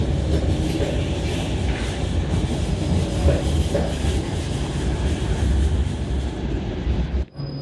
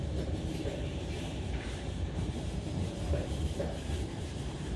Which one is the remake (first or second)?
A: second